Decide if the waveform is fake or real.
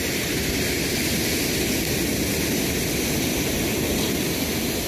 real